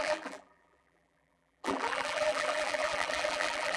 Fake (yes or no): yes